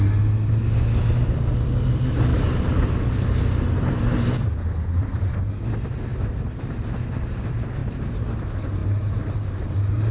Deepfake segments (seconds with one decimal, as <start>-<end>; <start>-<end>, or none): 6.1-7.2